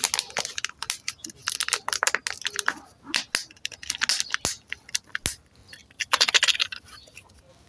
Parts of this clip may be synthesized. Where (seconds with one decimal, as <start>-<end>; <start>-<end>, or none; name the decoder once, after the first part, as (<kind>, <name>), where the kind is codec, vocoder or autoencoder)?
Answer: 5.8-6.5 (vocoder, BigVGAN v2)